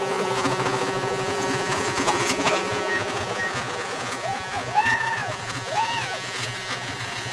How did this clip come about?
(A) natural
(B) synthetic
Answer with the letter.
B